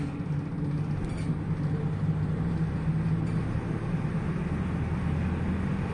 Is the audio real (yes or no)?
yes